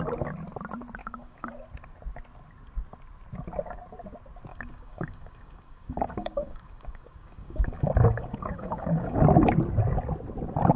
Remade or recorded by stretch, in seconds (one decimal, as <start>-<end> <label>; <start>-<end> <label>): 0.0-1.0 recorded; 1.0-1.5 remade; 1.5-4.5 recorded; 4.5-9.2 remade; 9.2-10.8 recorded